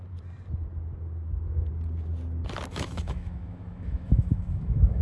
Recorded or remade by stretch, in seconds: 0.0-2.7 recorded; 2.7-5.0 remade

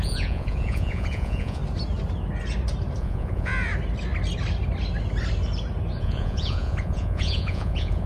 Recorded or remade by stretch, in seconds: 0.0-1.6 remade; 1.6-3.0 recorded; 3.0-3.5 remade; 3.5-6.0 recorded; 6.0-8.1 remade

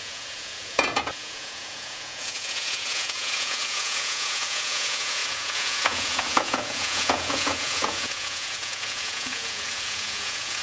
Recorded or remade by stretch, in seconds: 0.0-10.6 remade

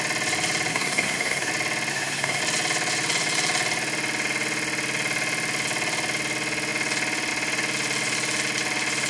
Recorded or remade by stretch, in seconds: 0.0-0.7 recorded; 0.7-1.5 remade; 1.5-1.9 recorded; 1.9-2.4 remade; 2.4-9.1 recorded

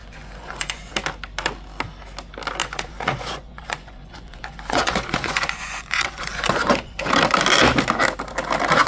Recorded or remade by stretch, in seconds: 0.0-0.9 remade; 0.9-2.6 recorded; 2.6-7.1 remade; 7.1-8.9 recorded

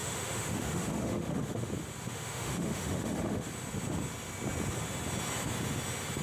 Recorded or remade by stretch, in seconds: 0.0-1.7 remade; 1.7-2.1 recorded; 2.1-3.5 remade; 3.5-6.2 recorded

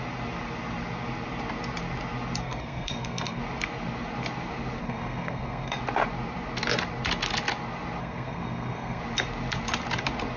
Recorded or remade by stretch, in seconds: 0.0-2.4 recorded; 2.4-3.4 remade; 3.4-4.8 recorded; 4.8-5.8 remade; 5.8-8.0 recorded; 8.0-9.0 remade; 9.0-10.4 recorded